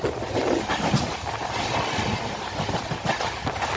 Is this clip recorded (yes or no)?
yes